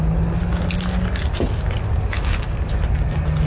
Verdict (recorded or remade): recorded